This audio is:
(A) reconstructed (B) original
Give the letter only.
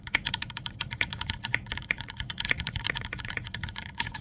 A